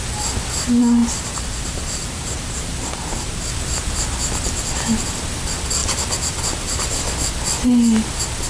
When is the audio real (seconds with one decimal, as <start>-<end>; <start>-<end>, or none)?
0.0-1.0; 3.5-8.5